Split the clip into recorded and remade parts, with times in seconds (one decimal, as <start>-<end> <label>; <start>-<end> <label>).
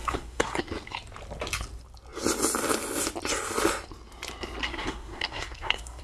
0.0-0.6 remade; 0.6-4.6 recorded; 4.6-6.0 remade